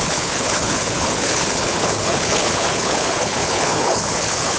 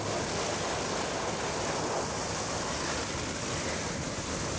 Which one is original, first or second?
second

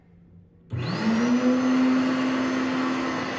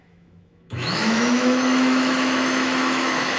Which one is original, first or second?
first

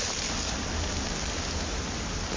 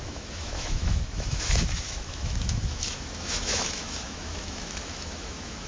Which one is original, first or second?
first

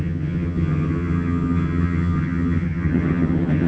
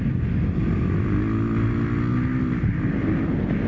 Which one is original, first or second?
second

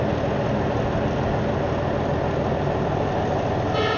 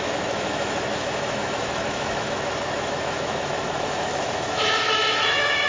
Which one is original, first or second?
first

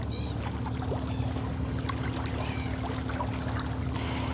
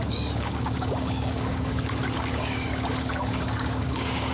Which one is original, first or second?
first